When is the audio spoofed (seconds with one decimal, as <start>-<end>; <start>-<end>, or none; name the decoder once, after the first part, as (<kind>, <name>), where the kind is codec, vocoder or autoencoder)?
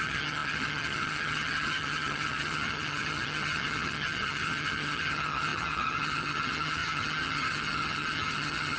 0.0-8.8 (vocoder, HiFi-GAN)